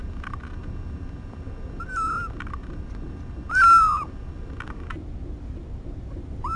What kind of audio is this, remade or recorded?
recorded